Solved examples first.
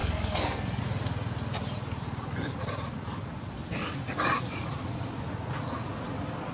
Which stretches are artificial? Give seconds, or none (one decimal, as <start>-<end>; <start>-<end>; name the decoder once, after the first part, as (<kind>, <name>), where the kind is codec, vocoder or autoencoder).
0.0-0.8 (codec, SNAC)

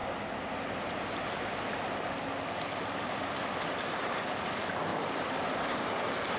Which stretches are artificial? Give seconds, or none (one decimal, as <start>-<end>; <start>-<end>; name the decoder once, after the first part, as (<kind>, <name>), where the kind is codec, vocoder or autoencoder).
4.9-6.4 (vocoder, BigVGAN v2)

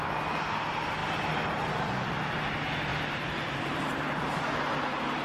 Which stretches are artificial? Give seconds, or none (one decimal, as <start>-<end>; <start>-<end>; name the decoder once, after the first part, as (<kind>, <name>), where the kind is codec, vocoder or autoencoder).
2.9-4.4 (vocoder, BigVGAN v2)